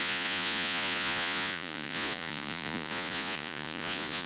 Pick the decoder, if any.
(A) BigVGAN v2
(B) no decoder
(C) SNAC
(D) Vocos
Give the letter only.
D